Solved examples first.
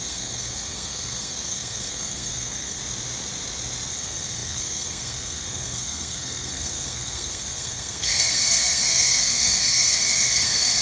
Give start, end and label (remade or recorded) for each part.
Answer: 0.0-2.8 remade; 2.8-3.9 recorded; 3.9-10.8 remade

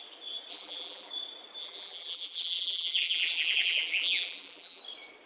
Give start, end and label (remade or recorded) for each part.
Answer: 0.0-0.5 recorded; 0.5-1.1 remade; 1.1-1.6 recorded; 1.6-4.8 remade; 4.8-5.3 recorded

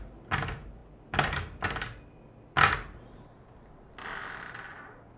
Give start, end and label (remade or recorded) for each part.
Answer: 0.0-5.2 recorded

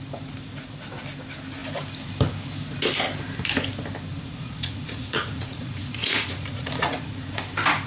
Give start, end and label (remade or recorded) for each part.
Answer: 0.0-4.1 recorded; 4.1-7.4 remade; 7.4-7.9 recorded